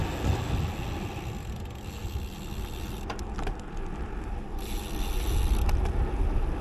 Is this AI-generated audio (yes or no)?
no